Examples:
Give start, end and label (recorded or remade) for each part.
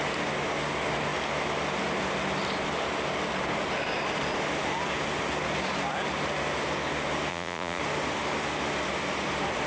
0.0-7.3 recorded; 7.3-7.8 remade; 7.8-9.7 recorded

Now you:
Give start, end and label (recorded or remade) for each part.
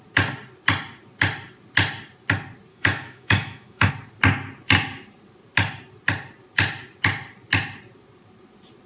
0.0-2.7 recorded; 2.7-3.9 remade; 3.9-8.9 recorded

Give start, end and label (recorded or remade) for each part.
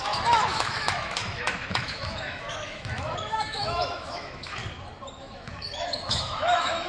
0.0-4.6 remade; 4.6-5.2 recorded; 5.2-6.9 remade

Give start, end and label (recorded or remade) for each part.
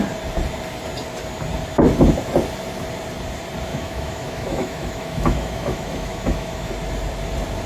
0.0-3.7 recorded; 3.7-6.7 remade; 6.7-7.7 recorded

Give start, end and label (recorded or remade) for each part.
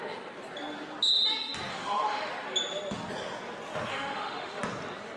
0.0-1.7 recorded; 1.7-2.3 remade; 2.3-3.9 recorded; 3.9-4.6 remade; 4.6-5.2 recorded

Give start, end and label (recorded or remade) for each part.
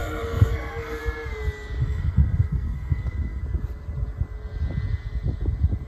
0.0-1.0 remade; 1.0-1.8 recorded; 1.8-3.4 remade; 3.4-5.9 recorded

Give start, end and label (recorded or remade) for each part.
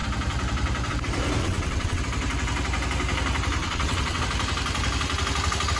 0.0-1.4 recorded; 1.4-2.0 remade; 2.0-3.6 recorded; 3.6-4.2 remade; 4.2-5.8 recorded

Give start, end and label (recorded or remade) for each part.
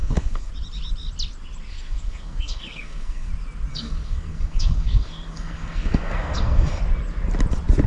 0.0-0.5 remade; 0.5-1.7 recorded; 1.7-3.3 remade; 3.3-3.7 recorded; 3.7-6.8 remade; 6.8-7.9 recorded